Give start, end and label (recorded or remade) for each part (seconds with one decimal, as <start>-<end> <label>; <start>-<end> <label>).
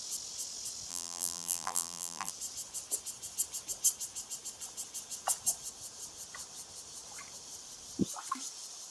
0.0-0.9 recorded; 0.9-2.3 remade; 2.3-8.9 recorded